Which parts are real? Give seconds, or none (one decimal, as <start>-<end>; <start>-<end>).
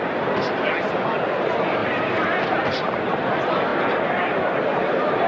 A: 0.0-5.3